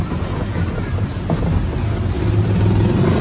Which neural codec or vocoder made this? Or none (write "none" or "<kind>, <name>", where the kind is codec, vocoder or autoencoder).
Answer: none